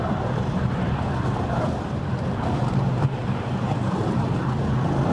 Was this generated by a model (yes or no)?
no